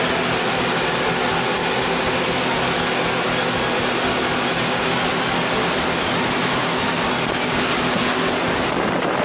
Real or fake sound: real